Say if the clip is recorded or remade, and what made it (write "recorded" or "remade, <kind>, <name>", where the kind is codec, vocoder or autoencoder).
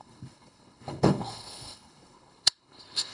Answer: remade, codec, HILCodec